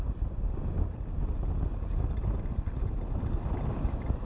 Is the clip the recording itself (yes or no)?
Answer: yes